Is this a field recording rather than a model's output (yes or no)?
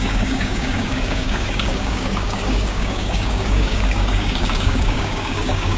no